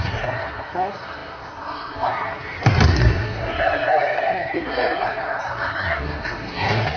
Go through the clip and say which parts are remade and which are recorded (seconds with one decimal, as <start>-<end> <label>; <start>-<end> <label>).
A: 0.0-7.0 remade